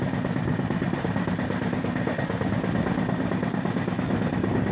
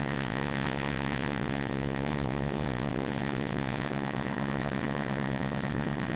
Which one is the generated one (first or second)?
second